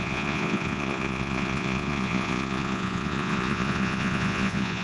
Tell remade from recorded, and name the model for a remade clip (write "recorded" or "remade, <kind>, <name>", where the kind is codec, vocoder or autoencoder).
remade, vocoder, Vocos